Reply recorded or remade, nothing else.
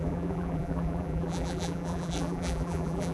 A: remade